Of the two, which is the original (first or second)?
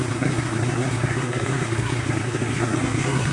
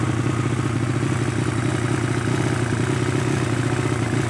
second